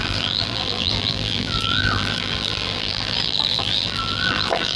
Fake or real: fake